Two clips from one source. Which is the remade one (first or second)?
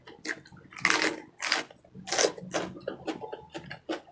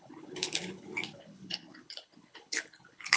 second